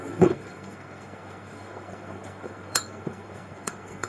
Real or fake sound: fake